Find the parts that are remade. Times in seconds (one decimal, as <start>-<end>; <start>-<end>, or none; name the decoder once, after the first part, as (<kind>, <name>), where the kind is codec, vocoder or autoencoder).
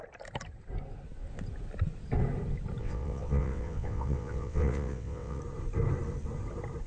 2.8-5.4 (vocoder, WaveNeXt)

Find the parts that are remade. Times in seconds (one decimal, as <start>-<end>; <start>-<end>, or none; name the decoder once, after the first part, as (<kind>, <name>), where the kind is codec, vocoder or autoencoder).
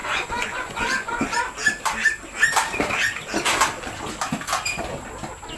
0.0-1.1 (vocoder, Vocos)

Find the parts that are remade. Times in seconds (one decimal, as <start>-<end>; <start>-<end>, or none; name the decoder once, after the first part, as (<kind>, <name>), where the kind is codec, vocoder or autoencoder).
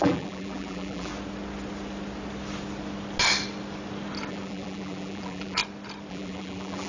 0.0-1.1 (vocoder, BigVGAN v2); 4.3-5.6; 6.1-6.9